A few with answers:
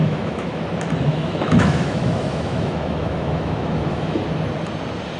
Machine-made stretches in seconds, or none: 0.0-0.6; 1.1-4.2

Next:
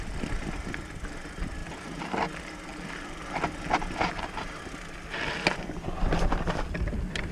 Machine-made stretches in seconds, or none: none

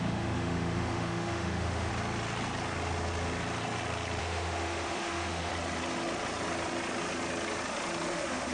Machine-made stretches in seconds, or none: 0.0-1.9; 4.2-5.5; 8.1-8.5